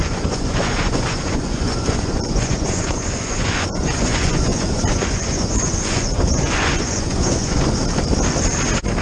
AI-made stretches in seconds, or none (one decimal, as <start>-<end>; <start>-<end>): 0.0-7.8